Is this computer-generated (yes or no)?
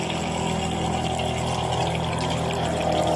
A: no